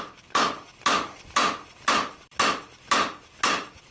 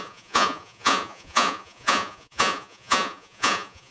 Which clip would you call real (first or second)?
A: first